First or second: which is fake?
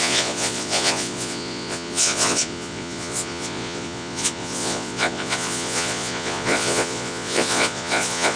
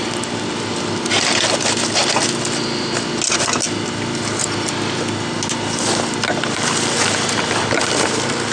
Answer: first